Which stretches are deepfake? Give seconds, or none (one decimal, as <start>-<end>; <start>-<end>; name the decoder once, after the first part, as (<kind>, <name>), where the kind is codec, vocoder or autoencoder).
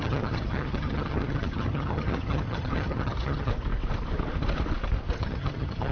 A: 0.0-3.5 (vocoder, HiFi-GAN); 5.2-5.9